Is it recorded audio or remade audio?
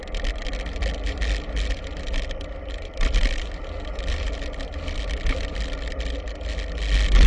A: recorded